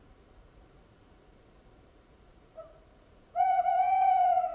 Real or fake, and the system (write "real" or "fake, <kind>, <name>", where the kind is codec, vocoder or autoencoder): fake, vocoder, Vocos